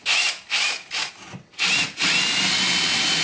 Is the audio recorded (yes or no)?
yes